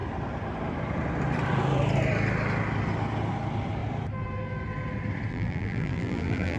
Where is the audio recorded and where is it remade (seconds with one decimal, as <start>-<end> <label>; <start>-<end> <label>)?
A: 0.0-5.3 recorded; 5.3-6.6 remade